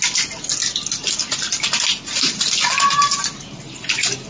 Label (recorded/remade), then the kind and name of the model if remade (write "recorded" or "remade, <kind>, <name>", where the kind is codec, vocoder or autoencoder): recorded